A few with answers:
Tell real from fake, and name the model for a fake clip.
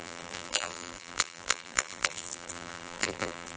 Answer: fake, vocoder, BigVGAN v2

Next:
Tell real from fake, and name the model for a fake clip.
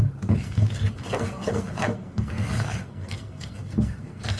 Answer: fake, codec, SNAC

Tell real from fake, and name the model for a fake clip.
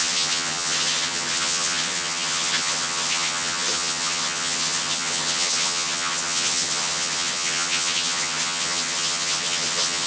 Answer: fake, vocoder, HiFi-GAN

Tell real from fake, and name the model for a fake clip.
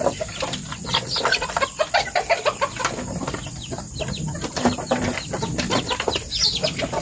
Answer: real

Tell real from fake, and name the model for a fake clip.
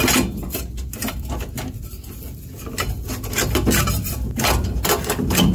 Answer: real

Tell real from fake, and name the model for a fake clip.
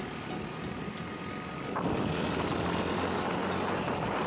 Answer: real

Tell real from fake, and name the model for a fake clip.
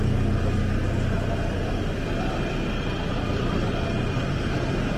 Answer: real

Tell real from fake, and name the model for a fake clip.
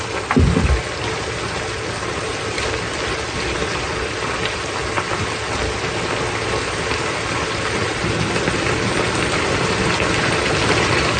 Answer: real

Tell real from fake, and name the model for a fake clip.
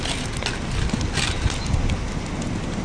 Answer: real